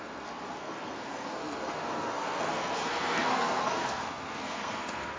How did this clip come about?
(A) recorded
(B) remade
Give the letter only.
B